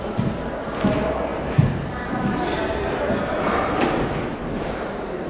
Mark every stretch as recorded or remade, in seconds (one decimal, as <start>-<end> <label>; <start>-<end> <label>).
0.0-5.3 remade